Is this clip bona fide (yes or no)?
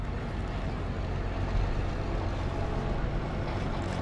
yes